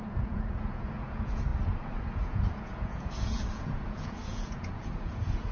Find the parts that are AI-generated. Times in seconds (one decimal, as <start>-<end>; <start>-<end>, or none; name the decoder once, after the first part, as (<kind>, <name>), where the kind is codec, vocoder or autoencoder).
0.0-5.5 (vocoder, Vocos)